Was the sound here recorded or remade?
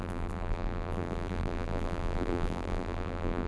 remade